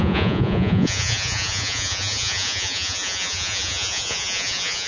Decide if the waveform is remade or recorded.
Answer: remade